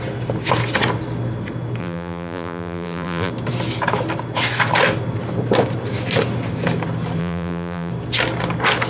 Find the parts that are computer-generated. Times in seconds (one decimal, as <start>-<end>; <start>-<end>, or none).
1.8-3.3; 7.2-7.9